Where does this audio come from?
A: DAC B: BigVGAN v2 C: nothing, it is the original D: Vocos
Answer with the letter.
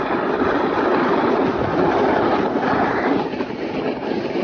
C